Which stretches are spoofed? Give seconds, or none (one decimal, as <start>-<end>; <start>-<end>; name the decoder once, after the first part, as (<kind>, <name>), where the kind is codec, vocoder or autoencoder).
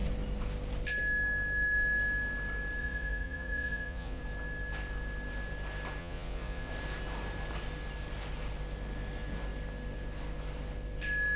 2.8-4.2 (vocoder, Vocos); 6.0-6.7